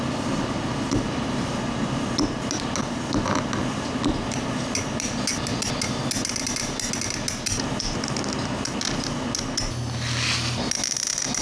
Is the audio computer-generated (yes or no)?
no